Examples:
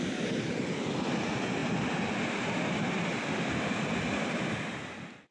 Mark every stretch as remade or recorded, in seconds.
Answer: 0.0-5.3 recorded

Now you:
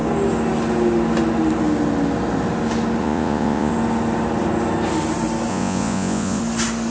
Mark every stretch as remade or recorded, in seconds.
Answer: 0.0-3.0 recorded; 3.0-3.7 remade; 3.7-5.5 recorded; 5.5-6.4 remade; 6.4-6.9 recorded

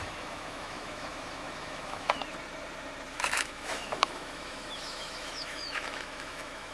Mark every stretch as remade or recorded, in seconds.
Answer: 0.0-2.2 remade; 2.2-3.1 recorded; 3.1-6.7 remade

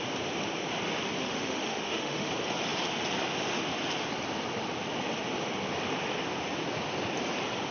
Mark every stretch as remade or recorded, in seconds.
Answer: 0.0-1.2 recorded; 1.2-2.3 remade; 2.3-7.7 recorded